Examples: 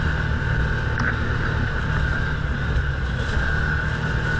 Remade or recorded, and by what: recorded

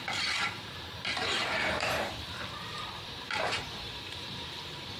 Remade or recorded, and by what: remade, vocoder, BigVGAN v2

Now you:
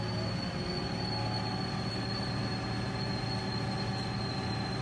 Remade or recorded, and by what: recorded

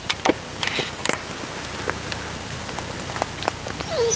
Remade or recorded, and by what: recorded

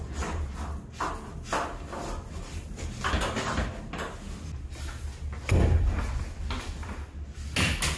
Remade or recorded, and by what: recorded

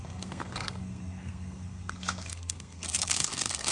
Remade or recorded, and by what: remade, codec, SNAC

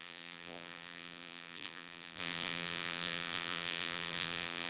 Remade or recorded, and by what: remade, vocoder, BigVGAN v2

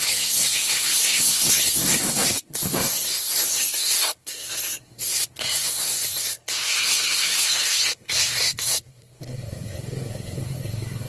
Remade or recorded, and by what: remade, codec, SNAC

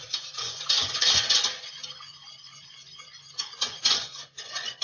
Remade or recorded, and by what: remade, vocoder, Vocos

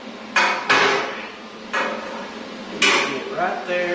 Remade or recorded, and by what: recorded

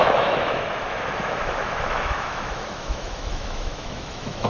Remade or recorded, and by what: remade, autoencoder, DAC-VAE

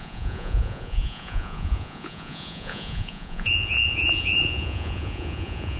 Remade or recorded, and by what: remade, vocoder, Vocos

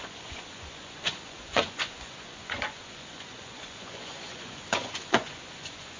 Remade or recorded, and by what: remade, vocoder, Vocos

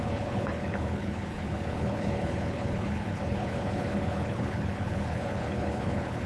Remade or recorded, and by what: remade, codec, HILCodec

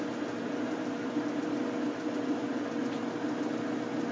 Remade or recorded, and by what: recorded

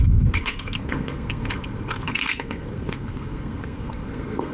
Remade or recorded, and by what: remade, codec, SNAC